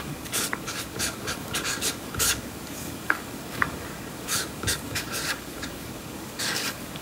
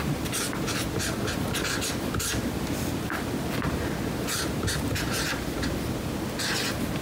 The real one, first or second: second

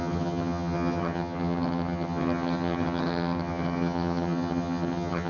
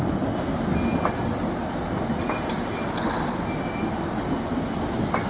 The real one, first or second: second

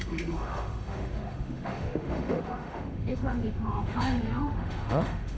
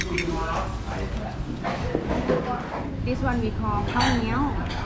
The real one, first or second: second